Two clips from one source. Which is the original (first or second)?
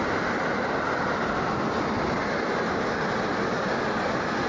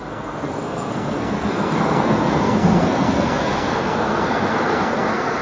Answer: first